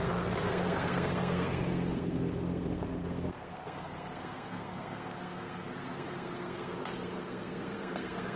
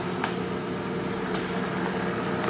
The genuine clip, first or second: second